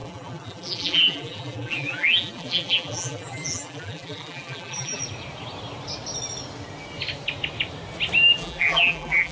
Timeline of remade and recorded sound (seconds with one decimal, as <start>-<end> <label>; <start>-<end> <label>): 0.0-5.0 remade; 5.0-8.4 recorded; 8.4-9.3 remade